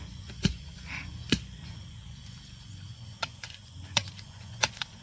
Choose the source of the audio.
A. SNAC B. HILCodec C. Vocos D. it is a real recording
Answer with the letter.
C